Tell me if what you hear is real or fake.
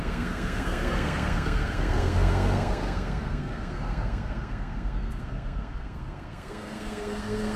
fake